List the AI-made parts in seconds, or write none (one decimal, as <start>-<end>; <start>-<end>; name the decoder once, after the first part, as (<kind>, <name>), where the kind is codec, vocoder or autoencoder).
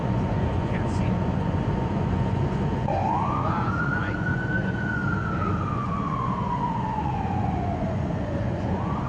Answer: 0.0-5.0 (vocoder, Vocos); 5.7-9.1